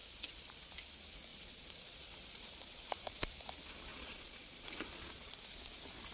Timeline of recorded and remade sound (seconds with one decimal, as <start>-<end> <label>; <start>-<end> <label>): 0.0-0.7 remade; 0.7-1.3 recorded; 1.3-3.3 remade; 3.3-3.9 recorded; 3.9-5.3 remade; 5.3-6.1 recorded